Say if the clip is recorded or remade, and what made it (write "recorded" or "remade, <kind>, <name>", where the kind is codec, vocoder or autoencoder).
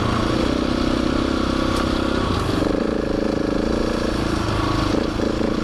recorded